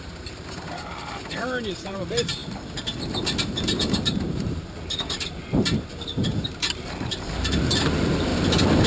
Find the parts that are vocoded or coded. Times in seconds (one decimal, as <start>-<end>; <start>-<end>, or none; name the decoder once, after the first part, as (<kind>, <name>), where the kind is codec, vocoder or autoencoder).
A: 0.0-8.9 (vocoder, BigVGAN v2)